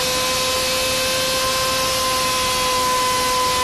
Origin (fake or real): real